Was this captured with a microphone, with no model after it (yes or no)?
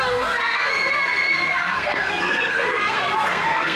no